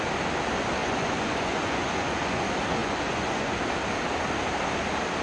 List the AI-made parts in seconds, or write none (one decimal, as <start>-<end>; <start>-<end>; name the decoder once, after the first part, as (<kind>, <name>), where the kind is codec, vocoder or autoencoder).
0.8-2.4 (vocoder, Vocos); 2.8-3.5